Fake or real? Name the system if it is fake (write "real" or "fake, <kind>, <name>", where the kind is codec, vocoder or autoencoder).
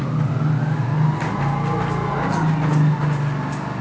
real